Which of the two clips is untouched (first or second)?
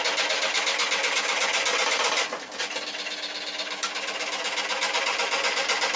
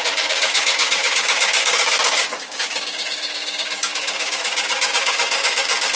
first